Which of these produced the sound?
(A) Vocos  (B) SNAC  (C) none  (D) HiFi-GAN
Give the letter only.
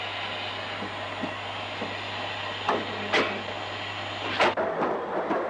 C